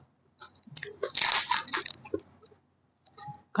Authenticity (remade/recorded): recorded